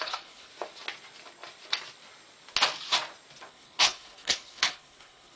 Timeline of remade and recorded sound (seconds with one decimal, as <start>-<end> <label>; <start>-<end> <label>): 0.0-0.5 remade; 0.5-3.5 recorded; 3.5-5.4 remade